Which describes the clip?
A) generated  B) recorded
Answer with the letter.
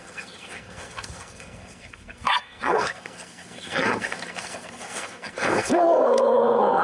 A